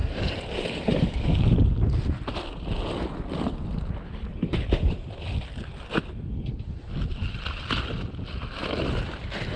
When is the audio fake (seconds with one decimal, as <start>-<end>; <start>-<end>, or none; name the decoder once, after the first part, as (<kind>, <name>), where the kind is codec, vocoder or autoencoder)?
0.0-1.4 (codec, DAC)